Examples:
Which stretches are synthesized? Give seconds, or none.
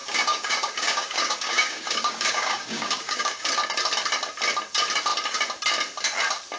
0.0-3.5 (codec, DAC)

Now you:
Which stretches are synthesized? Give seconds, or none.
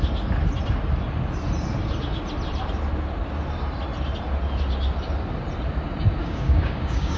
6.2-7.2 (codec, DAC)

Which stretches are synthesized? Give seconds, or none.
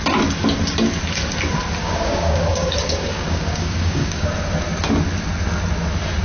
1.8-4.3 (codec, DAC)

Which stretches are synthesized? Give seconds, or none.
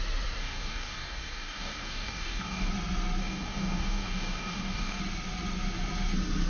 0.4-2.7 (codec, DAC); 3.2-5.0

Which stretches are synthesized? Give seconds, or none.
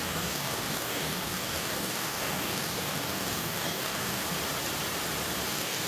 0.0-4.2 (codec, DAC); 5.5-5.9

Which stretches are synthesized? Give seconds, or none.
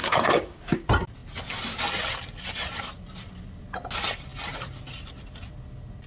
0.0-0.6 (codec, DAC)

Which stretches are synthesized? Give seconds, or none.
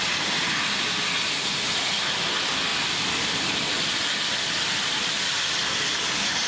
none